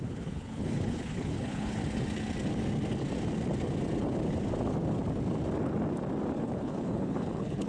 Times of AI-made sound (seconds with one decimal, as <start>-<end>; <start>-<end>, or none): 0.0-1.8; 6.4-7.7